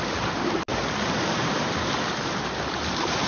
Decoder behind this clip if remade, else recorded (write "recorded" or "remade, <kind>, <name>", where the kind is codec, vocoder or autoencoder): recorded